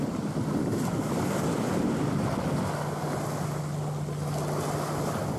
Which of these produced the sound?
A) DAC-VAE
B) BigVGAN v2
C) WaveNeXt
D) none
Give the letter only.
D